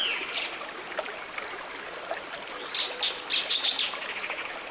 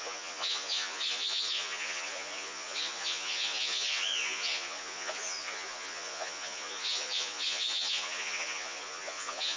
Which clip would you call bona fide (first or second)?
first